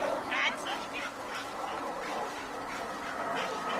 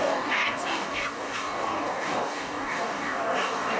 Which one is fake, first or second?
second